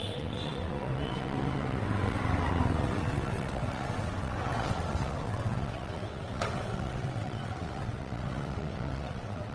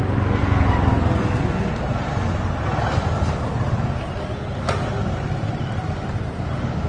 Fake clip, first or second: first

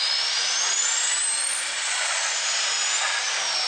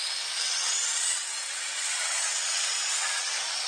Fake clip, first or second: second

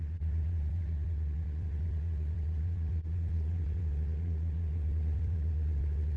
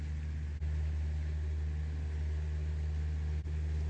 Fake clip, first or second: first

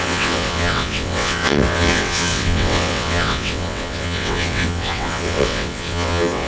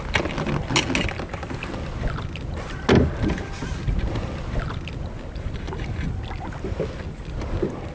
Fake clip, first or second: first